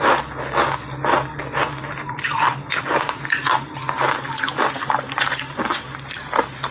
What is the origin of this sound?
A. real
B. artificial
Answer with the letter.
A